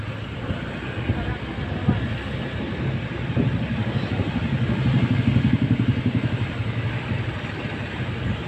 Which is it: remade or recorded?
recorded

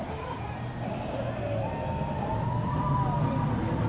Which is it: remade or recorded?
recorded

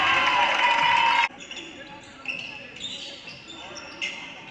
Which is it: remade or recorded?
recorded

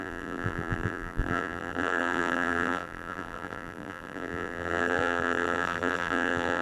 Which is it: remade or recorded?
remade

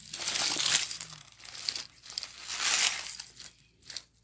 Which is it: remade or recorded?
recorded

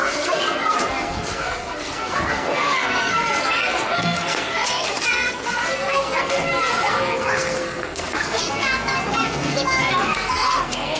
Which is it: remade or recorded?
remade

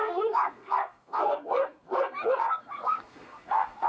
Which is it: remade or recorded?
remade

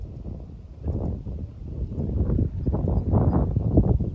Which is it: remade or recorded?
recorded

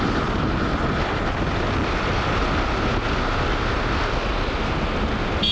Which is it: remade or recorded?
recorded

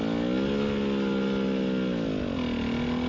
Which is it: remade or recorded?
recorded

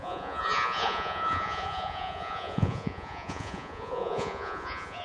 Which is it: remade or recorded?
remade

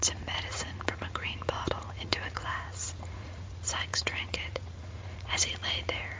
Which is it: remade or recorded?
remade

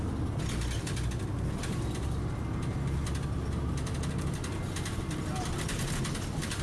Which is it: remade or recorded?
recorded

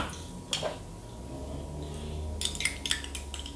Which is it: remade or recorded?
recorded